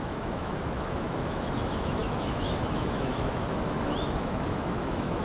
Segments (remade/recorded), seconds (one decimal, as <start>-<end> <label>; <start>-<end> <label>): 0.0-5.2 remade